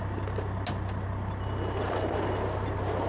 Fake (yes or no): no